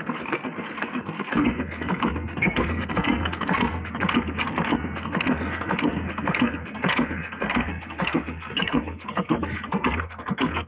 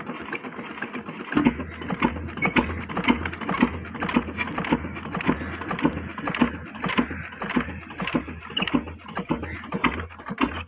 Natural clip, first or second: second